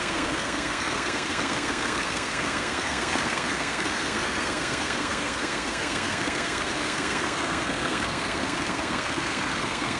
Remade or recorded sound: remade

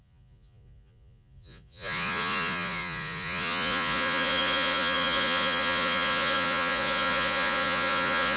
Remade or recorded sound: remade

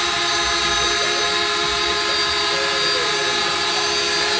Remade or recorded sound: recorded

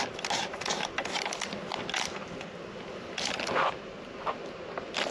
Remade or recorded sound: recorded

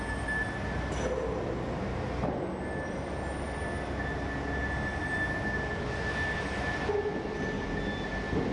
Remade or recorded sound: recorded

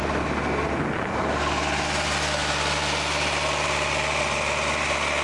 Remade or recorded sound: recorded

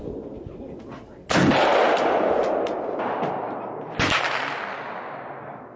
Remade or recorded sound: recorded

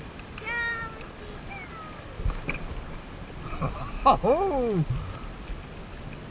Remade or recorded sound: recorded